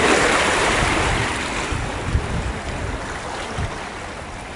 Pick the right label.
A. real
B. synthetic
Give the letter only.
A